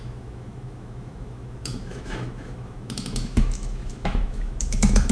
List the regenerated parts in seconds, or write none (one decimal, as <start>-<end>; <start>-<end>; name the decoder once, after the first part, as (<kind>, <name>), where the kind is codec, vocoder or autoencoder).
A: 0.0-5.1 (autoencoder, DAC-VAE)

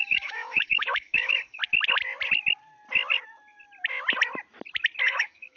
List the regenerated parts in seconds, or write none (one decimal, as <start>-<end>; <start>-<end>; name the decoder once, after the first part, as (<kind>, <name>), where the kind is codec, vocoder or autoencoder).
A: 0.0-1.6 (autoencoder, DAC-VAE); 5.0-5.6

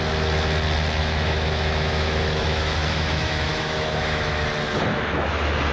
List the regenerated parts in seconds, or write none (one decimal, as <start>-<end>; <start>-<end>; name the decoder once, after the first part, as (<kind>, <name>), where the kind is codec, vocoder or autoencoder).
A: 1.0-4.4 (autoencoder, DAC-VAE); 4.9-5.7

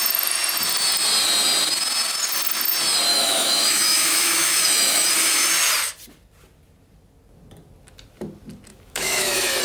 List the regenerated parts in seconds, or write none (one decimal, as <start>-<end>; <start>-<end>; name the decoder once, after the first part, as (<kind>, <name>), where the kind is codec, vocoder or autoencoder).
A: 3.1-5.1 (autoencoder, DAC-VAE); 8.7-9.6